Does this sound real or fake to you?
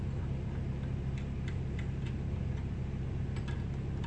real